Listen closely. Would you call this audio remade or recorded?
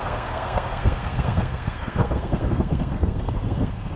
remade